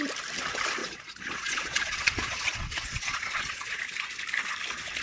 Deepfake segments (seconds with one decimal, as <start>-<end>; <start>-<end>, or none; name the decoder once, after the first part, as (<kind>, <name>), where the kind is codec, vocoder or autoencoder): 0.8-3.8 (vocoder, Vocos)